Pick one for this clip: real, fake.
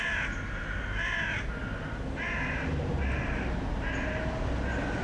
real